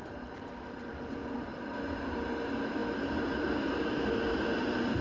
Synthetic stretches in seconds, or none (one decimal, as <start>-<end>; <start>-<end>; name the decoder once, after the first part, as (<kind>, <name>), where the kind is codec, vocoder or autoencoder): none